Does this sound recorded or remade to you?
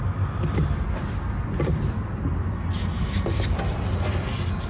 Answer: recorded